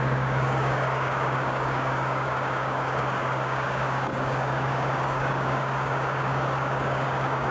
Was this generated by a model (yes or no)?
yes